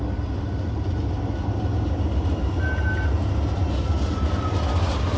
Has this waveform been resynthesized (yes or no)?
no